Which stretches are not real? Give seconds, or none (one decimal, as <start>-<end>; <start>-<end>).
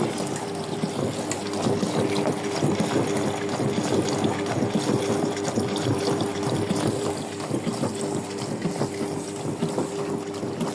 6.3-7.1